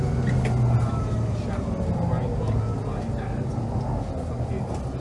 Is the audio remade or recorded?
recorded